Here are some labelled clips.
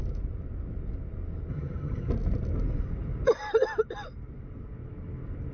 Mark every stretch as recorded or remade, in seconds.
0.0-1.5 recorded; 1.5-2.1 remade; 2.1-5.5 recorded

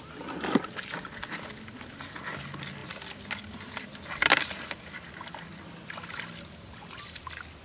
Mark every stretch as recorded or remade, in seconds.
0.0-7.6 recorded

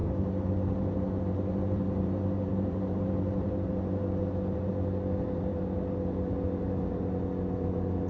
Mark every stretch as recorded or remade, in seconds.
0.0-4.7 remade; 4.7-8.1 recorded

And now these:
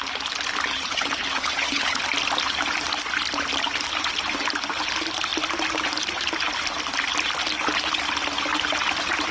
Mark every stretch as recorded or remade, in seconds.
0.0-0.7 recorded; 0.7-2.0 remade; 2.0-9.3 recorded

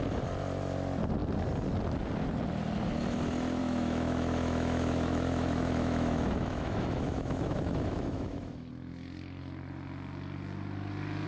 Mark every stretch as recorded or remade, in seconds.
0.0-3.6 recorded; 3.6-8.7 remade; 8.7-11.3 recorded

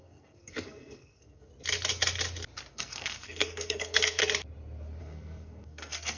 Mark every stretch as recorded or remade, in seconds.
0.0-1.5 remade; 1.5-2.7 recorded; 2.7-4.2 remade; 4.2-5.0 recorded; 5.0-6.2 remade

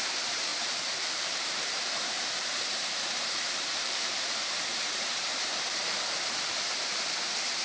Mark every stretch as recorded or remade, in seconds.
0.0-2.5 remade; 2.5-3.4 recorded; 3.4-7.6 remade